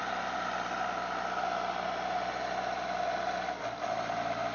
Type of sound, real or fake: real